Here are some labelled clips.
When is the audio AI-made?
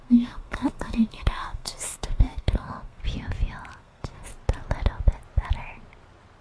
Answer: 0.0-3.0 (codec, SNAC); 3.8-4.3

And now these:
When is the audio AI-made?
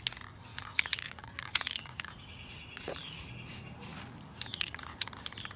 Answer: 0.5-3.3 (vocoder, Vocos); 4.5-5.1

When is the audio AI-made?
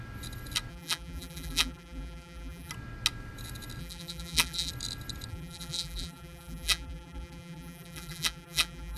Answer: 0.7-2.7 (vocoder, BigVGAN v2); 3.8-4.7; 5.3-9.0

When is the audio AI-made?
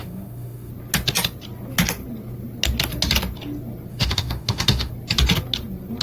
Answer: 0.0-0.7 (autoencoder, DAC-VAE); 3.9-4.9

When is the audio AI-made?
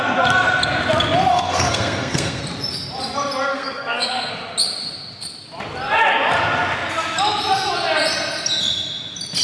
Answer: 1.3-2.4 (codec, SNAC); 3.5-4.3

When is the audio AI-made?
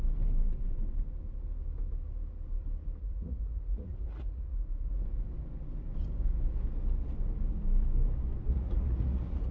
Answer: 3.0-4.9 (vocoder, Vocos); 8.5-9.5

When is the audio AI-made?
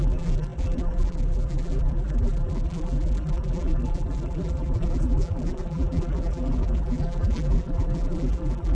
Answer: 0.0-8.7 (vocoder, BigVGAN v2)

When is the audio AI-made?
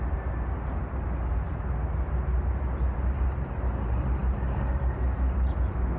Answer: none